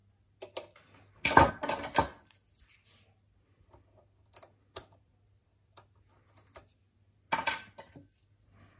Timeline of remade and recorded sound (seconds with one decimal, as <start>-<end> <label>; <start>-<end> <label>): 0.0-8.8 recorded